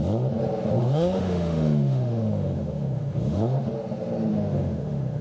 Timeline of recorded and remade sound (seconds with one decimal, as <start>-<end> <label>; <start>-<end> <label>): 0.0-0.8 recorded; 0.8-3.7 remade; 3.7-4.3 recorded; 4.3-5.2 remade